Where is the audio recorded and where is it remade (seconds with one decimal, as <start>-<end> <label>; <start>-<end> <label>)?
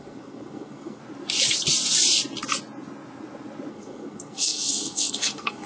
0.0-1.0 remade; 1.0-3.7 recorded; 3.7-5.7 remade